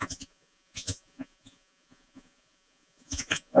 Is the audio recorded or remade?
remade